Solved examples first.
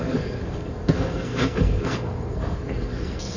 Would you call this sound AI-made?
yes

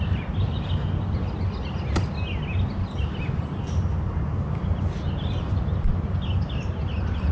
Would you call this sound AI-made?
no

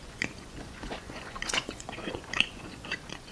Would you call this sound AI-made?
yes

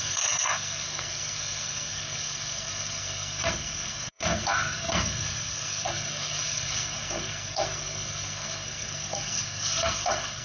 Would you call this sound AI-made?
yes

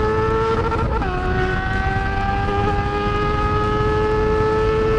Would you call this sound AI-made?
no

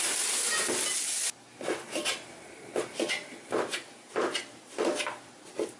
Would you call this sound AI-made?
no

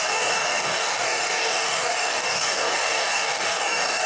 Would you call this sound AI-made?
yes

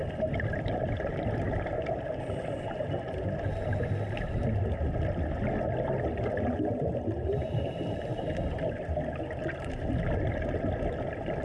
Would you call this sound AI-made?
no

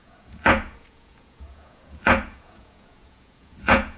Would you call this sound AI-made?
yes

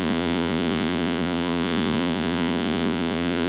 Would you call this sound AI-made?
yes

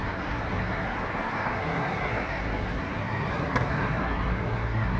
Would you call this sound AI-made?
yes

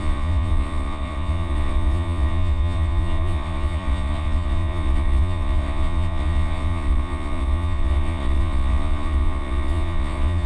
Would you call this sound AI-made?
yes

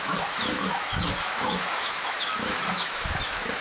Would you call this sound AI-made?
yes